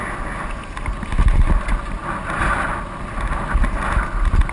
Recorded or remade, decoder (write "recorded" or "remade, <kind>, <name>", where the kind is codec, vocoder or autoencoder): recorded